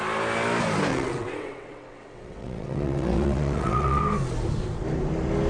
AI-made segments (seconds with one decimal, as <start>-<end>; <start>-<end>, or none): 0.9-4.0